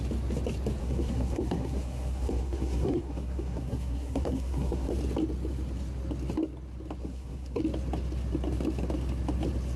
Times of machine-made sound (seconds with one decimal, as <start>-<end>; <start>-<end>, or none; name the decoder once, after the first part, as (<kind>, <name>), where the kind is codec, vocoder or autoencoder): 0.8-4.9 (codec, SNAC); 7.0-7.6